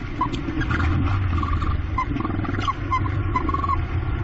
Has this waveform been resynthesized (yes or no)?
no